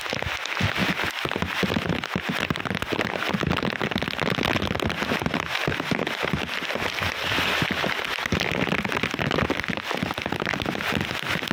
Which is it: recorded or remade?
recorded